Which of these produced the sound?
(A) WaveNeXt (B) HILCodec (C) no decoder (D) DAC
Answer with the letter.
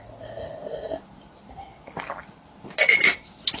C